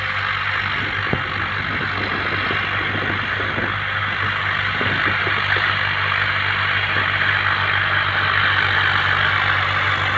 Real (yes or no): yes